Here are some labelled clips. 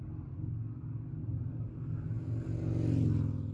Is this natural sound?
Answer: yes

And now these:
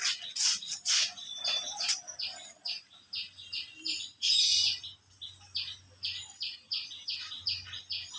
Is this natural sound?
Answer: yes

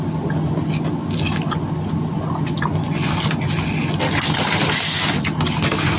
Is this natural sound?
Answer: yes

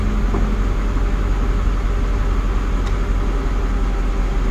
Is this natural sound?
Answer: yes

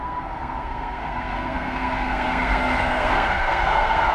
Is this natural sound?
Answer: no